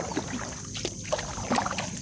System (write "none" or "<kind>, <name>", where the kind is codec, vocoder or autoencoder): none